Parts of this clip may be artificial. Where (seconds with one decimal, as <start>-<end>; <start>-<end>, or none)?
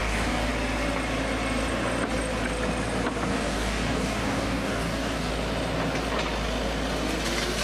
0.0-0.5; 3.3-5.3